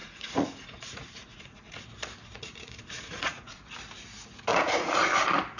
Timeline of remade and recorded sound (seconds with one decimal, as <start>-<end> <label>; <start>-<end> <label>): 0.0-1.8 remade; 1.8-2.2 recorded; 2.2-3.6 remade; 3.6-4.5 recorded; 4.5-5.0 remade; 5.0-5.6 recorded